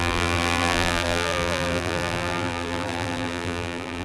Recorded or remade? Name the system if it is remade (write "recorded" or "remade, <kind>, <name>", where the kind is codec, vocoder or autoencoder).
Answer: remade, vocoder, BigVGAN v2